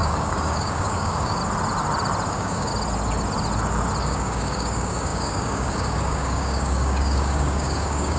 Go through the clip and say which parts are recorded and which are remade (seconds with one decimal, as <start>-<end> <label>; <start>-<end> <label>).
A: 0.0-1.4 remade; 1.4-2.3 recorded; 2.3-2.7 remade; 2.7-4.0 recorded; 4.0-8.2 remade